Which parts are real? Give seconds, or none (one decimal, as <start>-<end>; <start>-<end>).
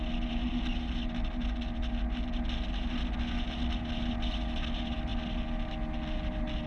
0.0-6.7